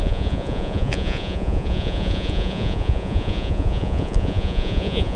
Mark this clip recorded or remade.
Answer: remade